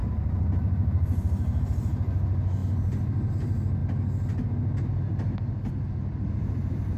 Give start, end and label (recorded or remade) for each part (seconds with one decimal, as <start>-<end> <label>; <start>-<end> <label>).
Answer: 0.0-1.6 remade; 1.6-7.0 recorded